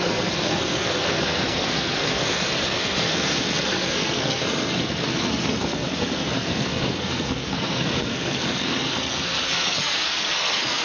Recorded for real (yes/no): no